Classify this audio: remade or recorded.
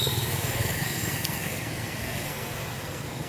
remade